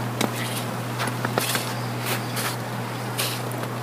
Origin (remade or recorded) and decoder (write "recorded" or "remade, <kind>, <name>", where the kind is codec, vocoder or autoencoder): recorded